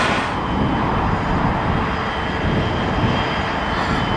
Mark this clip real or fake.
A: real